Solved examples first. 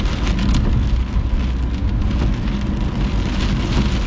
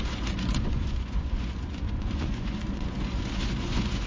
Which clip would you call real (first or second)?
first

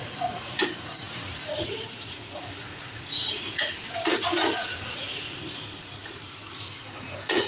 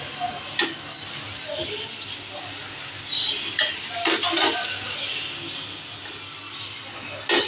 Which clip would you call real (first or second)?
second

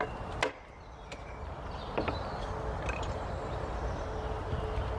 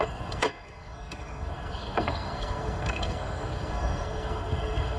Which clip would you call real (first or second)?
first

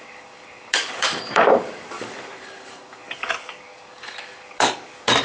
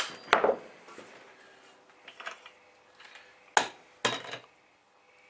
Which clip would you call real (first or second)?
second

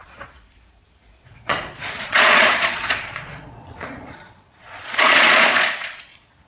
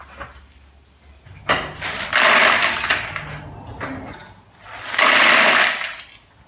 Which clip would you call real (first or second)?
second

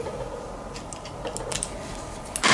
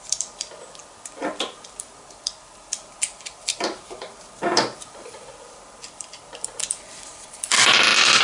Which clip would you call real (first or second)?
first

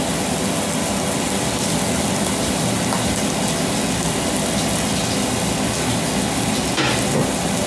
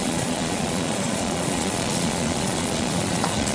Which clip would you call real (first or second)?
first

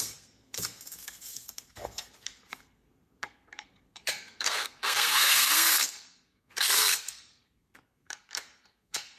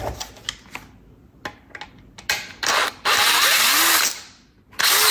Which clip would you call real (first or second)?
second